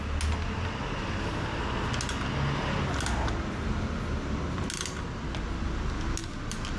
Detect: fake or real real